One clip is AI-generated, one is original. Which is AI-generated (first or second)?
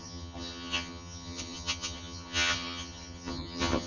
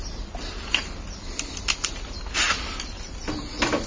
first